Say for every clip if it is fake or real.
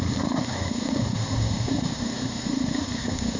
fake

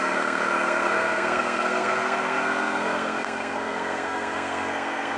fake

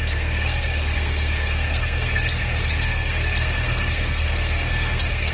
fake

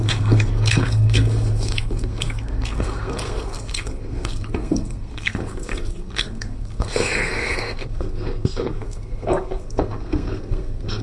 fake